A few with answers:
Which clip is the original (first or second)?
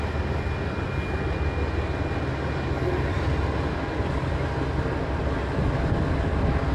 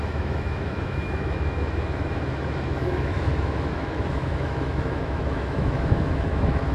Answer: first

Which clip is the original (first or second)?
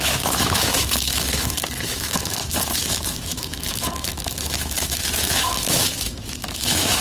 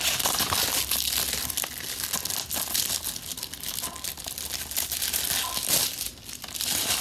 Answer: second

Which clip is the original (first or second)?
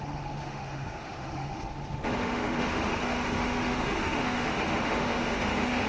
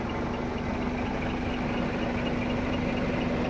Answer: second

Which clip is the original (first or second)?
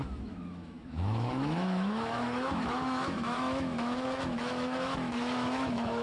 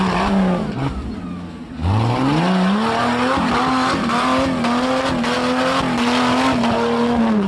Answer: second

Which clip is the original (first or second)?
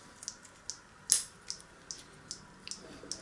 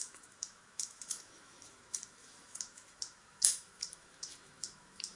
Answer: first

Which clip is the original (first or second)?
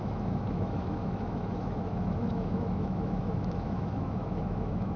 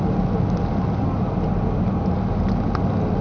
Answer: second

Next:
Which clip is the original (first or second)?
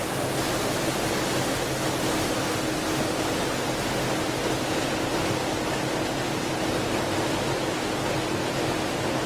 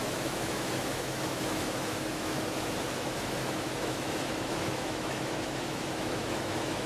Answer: first